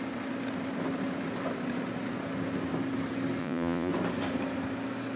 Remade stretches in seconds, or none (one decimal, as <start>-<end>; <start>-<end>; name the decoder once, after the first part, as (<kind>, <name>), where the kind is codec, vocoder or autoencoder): 3.4-3.9 (vocoder, Vocos)